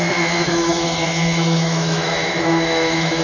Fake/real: fake